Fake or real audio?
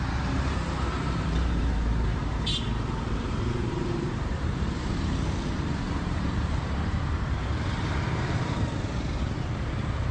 fake